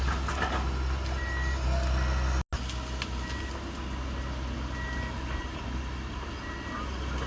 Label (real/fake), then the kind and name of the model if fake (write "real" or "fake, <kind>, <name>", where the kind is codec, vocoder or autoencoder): real